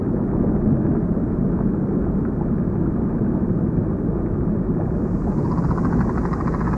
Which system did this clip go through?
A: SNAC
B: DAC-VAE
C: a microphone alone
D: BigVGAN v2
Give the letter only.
C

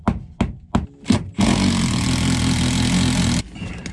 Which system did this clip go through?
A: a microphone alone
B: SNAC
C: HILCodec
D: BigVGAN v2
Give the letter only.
A